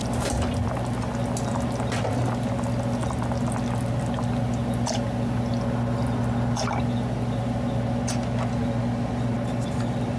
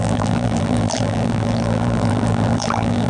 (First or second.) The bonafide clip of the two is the first